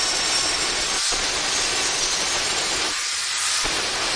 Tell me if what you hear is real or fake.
real